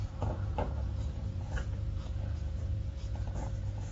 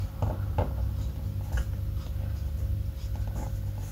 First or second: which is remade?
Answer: first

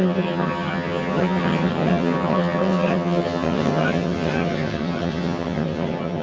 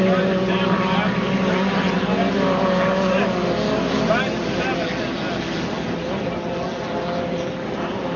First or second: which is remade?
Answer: first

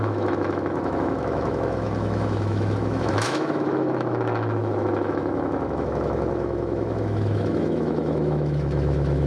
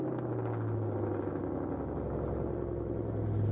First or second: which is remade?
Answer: first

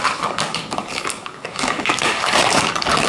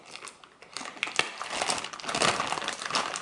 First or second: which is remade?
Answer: first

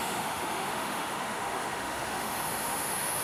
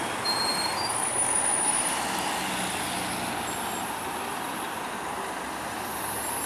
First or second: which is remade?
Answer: first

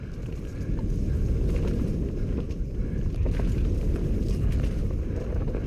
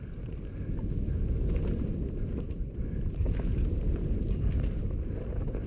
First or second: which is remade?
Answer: second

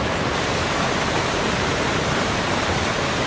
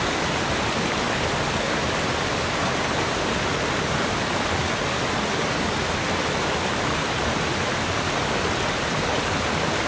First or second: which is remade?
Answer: first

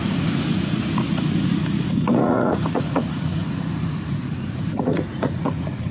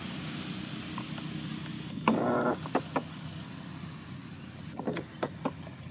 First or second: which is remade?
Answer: first